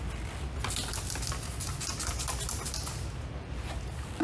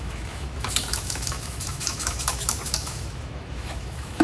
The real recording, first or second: first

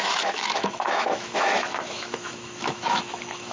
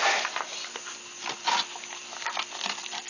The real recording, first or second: second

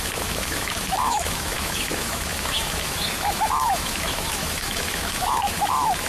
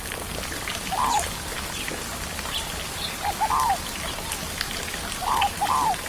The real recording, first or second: second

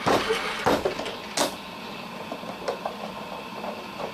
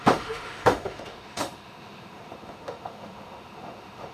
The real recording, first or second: first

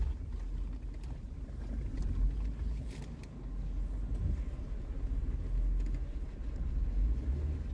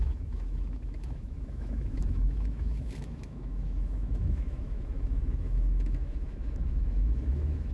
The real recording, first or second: first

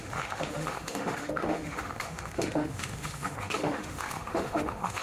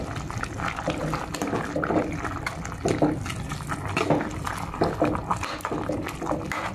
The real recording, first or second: second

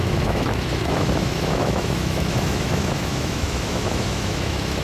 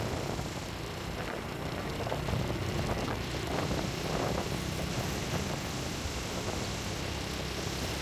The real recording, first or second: second